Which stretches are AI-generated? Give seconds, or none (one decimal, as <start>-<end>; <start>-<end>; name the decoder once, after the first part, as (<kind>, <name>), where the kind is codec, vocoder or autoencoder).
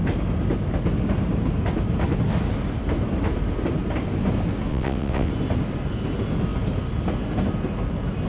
4.7-5.3 (vocoder, WaveNeXt)